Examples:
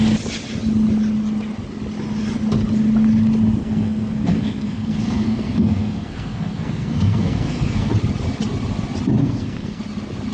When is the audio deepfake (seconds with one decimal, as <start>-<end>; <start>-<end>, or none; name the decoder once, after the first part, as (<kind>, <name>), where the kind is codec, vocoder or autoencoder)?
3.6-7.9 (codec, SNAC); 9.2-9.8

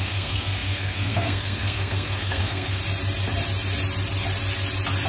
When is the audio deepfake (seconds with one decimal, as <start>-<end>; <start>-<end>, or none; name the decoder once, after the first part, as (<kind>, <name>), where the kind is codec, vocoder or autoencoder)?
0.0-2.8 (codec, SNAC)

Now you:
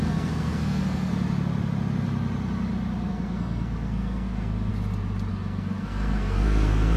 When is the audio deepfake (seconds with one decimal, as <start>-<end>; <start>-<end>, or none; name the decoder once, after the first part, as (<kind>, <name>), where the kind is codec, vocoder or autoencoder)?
0.0-1.1 (codec, SNAC); 3.1-4.7; 5.3-7.0

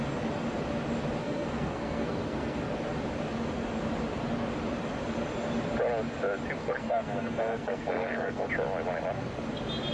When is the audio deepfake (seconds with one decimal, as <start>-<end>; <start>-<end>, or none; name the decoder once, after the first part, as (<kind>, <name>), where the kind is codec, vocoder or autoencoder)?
1.2-2.6 (codec, SNAC); 6.6-8.5